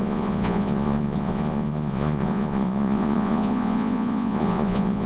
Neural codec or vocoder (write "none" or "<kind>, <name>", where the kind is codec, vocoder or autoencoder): vocoder, Vocos